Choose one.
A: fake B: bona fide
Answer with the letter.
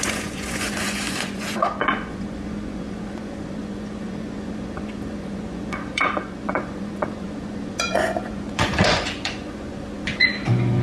A